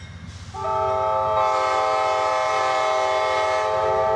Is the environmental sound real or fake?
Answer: real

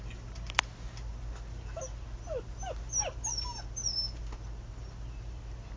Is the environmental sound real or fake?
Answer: real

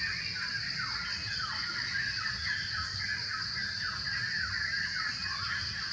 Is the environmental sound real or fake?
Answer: real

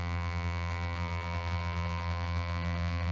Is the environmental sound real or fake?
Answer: fake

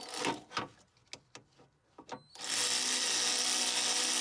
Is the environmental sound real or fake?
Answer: real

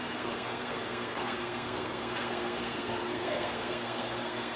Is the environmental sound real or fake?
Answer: fake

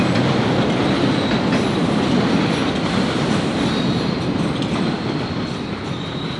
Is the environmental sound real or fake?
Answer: real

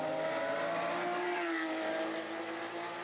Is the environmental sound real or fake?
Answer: real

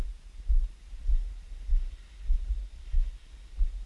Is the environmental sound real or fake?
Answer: real